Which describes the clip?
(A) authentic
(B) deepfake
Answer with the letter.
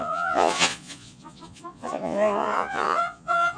B